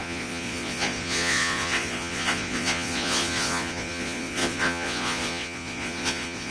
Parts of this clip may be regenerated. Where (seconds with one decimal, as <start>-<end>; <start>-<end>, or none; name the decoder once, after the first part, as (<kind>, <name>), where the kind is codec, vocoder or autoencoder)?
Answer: 0.0-6.5 (vocoder, Vocos)